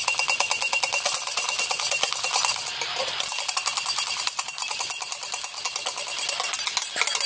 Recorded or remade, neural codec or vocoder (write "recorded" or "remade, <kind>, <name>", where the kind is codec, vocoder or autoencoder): recorded